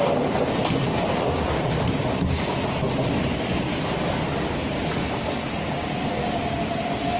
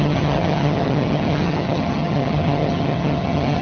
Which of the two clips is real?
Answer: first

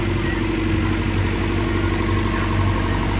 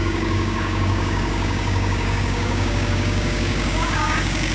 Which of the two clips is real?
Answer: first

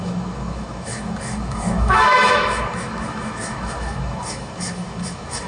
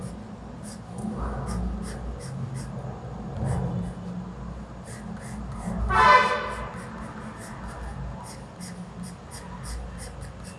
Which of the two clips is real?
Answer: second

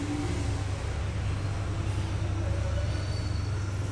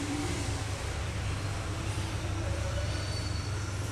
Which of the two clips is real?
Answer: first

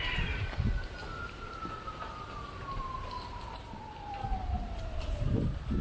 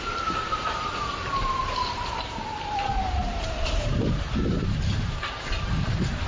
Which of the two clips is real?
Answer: first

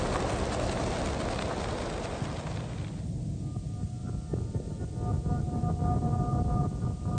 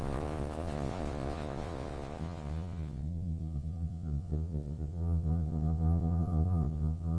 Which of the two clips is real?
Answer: first